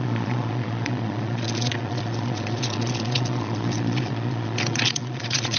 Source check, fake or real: fake